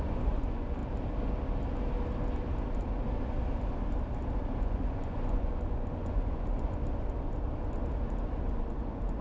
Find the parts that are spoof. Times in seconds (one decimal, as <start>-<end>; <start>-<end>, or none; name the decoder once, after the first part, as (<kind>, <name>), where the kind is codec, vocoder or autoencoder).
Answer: 0.0-0.8 (vocoder, Vocos); 4.6-6.8